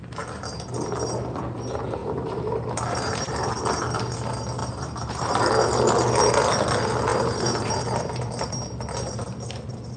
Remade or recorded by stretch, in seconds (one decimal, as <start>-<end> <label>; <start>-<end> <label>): 0.0-2.0 recorded; 2.0-3.1 remade; 3.1-4.6 recorded; 4.6-5.5 remade; 5.5-7.1 recorded; 7.1-7.7 remade; 7.7-10.0 recorded